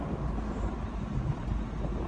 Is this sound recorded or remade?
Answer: recorded